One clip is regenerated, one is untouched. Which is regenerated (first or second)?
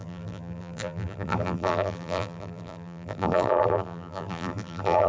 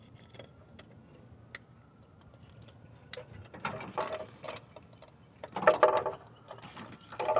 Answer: first